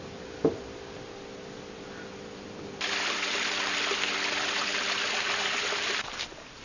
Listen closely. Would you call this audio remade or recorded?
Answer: recorded